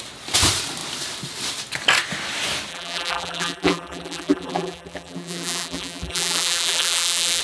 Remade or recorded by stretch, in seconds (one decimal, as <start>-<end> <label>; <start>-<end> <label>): 0.0-2.7 recorded; 2.7-7.4 remade